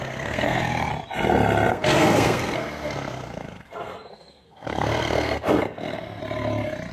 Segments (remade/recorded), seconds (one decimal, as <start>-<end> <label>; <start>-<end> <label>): 0.0-0.9 remade; 0.9-1.7 recorded; 1.7-6.2 remade; 6.2-6.9 recorded